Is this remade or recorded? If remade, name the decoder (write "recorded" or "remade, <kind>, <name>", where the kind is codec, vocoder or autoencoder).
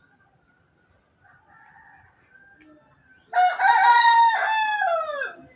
recorded